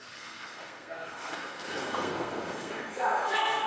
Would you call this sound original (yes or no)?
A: no